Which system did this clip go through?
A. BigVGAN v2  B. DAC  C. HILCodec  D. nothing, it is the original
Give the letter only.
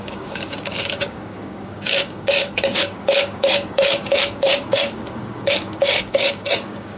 B